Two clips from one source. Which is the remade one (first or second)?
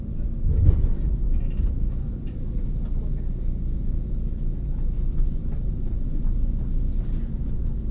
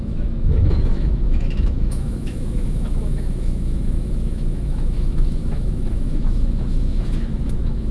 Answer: second